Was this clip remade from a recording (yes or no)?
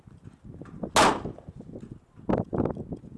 no